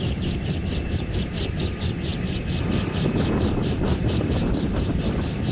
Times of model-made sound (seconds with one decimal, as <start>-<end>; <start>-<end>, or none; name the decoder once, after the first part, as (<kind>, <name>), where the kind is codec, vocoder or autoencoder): none

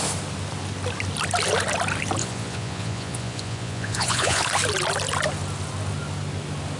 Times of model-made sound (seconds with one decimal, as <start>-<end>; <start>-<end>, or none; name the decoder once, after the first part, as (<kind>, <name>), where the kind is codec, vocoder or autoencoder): 2.2-4.4 (vocoder, Vocos)

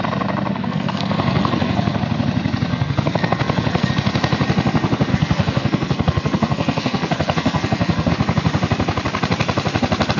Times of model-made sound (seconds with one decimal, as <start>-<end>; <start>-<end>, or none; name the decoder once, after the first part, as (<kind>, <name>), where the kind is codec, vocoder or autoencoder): 0.5-2.0 (codec, SNAC); 2.7-3.9; 5.1-8.1

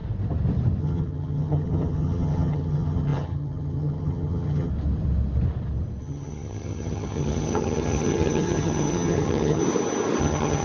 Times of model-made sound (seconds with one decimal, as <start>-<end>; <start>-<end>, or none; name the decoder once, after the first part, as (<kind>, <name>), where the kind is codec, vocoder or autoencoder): 0.8-4.7 (vocoder, HiFi-GAN); 6.0-9.6; 10.2-10.6

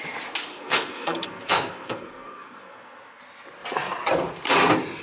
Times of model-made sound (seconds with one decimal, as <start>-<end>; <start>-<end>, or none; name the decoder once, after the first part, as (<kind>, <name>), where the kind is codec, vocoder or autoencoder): 0.5-3.2 (codec, SNAC)

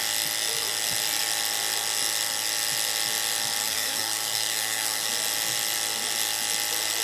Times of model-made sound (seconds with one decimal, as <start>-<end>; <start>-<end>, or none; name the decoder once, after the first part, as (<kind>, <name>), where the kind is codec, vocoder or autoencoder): 3.6-5.1 (codec, SNAC)

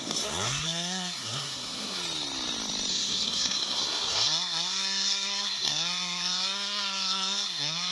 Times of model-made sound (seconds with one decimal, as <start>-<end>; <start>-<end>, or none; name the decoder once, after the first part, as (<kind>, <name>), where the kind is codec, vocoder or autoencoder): 0.0-2.0 (codec, SNAC); 2.9-7.9

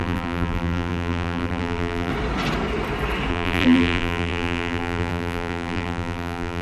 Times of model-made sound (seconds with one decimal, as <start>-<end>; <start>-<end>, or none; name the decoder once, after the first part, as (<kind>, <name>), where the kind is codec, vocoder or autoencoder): 0.0-2.1 (vocoder, BigVGAN v2); 3.3-6.6